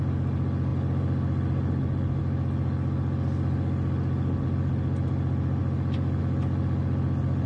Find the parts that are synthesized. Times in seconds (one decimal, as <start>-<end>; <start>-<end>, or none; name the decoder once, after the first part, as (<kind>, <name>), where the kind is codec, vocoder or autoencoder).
none